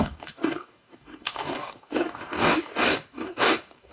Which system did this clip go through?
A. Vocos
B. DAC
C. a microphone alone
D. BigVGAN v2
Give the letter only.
B